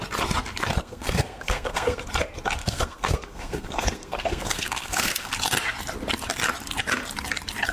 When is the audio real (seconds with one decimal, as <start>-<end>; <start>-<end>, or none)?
0.0-0.8; 2.0-2.6; 5.3-7.7